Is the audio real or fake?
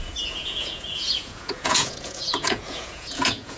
fake